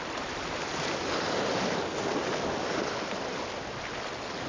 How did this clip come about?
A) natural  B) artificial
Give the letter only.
A